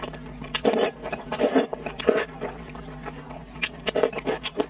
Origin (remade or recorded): recorded